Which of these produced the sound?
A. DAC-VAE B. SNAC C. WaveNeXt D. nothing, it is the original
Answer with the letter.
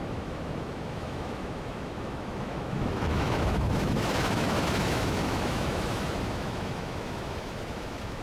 A